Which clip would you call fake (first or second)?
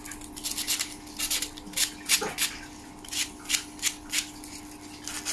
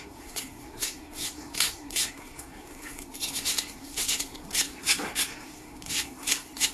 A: second